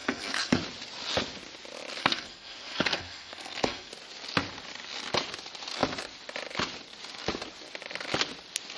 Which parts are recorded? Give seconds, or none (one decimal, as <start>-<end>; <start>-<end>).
0.6-2.0; 3.9-8.8